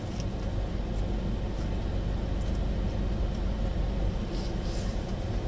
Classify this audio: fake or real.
real